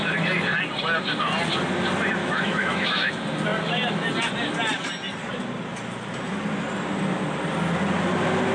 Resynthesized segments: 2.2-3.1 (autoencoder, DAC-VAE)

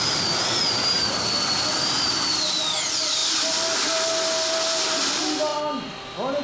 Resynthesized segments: none

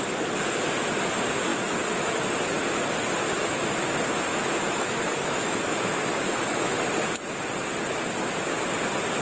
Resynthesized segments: 1.5-2.3 (autoencoder, DAC-VAE); 4.3-6.8

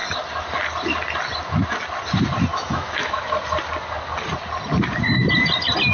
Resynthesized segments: 2.5-3.2 (autoencoder, DAC-VAE)